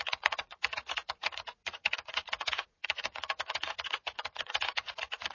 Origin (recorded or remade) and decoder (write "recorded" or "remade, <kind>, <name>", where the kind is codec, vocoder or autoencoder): remade, vocoder, Vocos